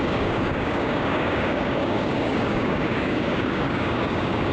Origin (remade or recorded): remade